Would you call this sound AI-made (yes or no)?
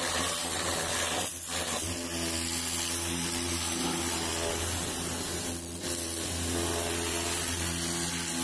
no